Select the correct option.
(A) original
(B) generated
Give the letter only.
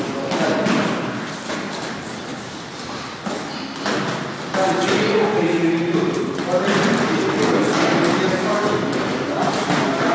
A